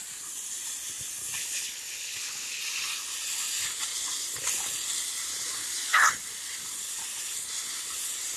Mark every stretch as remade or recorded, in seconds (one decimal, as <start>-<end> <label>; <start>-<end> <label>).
0.0-1.4 recorded; 1.4-2.6 remade; 2.6-5.6 recorded; 5.6-6.1 remade; 6.1-8.4 recorded